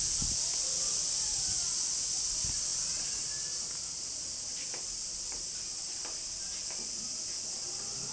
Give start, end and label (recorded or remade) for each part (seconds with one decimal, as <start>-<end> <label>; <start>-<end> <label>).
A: 0.0-8.1 recorded